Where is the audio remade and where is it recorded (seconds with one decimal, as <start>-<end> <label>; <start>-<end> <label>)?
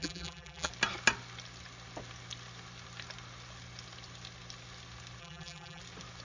0.0-0.7 remade; 0.7-5.2 recorded; 5.2-5.8 remade; 5.8-6.2 recorded